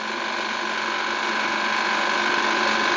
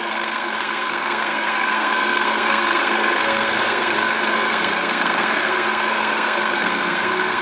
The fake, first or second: second